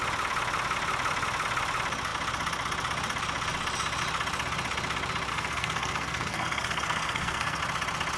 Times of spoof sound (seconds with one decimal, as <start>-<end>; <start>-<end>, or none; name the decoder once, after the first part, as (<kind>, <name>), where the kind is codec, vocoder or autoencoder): 5.3-7.6 (codec, SNAC)

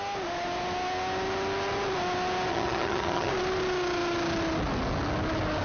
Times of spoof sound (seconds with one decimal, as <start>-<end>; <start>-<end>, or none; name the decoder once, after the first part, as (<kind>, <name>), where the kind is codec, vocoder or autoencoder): 2.5-3.3 (vocoder, HiFi-GAN)

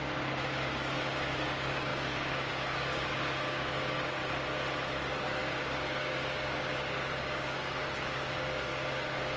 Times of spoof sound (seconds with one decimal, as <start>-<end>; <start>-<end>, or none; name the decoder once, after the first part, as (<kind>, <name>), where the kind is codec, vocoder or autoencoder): 0.0-4.2 (codec, DAC); 5.0-9.4